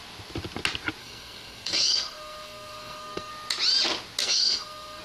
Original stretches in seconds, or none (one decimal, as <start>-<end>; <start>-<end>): 0.0-1.0; 3.3-4.2